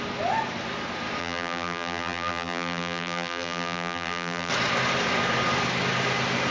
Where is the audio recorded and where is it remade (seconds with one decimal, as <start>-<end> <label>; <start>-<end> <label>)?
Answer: 0.0-1.2 recorded; 1.2-4.5 remade; 4.5-6.5 recorded